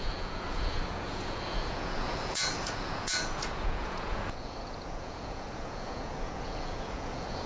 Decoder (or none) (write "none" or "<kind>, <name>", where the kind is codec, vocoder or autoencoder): vocoder, Vocos